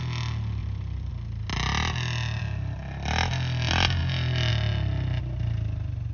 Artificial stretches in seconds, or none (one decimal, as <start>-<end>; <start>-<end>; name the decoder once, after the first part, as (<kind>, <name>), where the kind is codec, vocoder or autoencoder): 0.6-1.1 (vocoder, BigVGAN v2); 4.0-4.5